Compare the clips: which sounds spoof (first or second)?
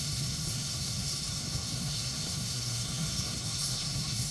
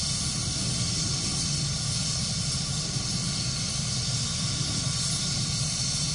first